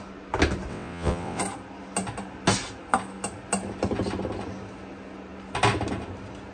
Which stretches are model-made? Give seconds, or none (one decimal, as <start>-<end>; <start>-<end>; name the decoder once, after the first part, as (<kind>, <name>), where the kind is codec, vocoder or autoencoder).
0.7-1.4 (vocoder, WaveNeXt)